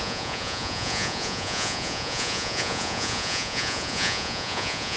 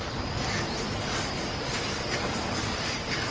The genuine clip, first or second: second